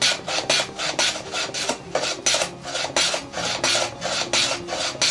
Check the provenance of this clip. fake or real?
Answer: real